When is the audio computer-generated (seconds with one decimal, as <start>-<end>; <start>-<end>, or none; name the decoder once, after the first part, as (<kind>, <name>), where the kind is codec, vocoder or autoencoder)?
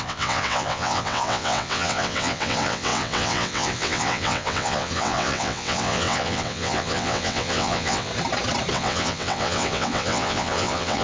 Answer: 0.0-8.1 (vocoder, WaveNeXt); 8.7-11.0